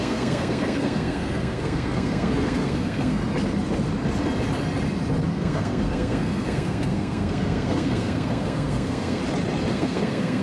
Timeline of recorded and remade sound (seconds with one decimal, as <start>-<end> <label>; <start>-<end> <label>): 0.0-3.2 remade; 3.2-5.3 recorded; 5.3-9.2 remade; 9.2-9.7 recorded; 9.7-10.4 remade